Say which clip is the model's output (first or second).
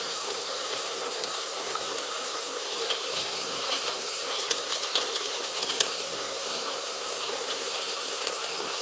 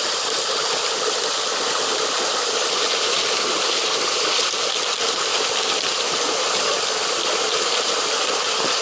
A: first